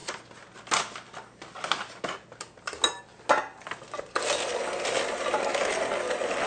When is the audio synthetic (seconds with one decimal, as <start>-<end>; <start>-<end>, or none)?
none